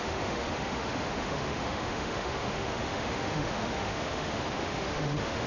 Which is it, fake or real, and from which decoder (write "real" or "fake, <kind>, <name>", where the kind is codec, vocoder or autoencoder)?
fake, autoencoder, DAC-VAE